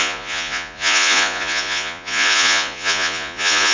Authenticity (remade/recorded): remade